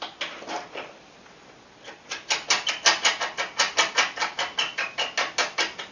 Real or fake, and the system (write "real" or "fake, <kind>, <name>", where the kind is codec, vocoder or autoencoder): real